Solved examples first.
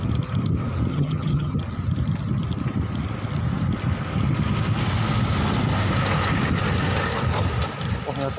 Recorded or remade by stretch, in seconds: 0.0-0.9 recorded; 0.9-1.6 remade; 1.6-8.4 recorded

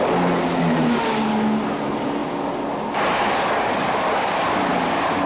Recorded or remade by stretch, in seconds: 0.0-5.3 recorded

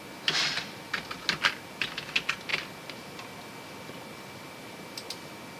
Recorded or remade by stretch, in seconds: 0.0-5.6 recorded